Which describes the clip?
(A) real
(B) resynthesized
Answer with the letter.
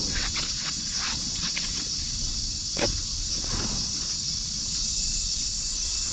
B